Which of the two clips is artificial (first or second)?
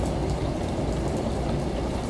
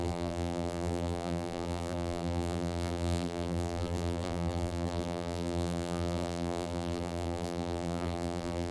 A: second